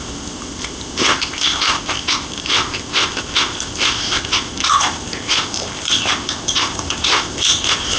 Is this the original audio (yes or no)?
no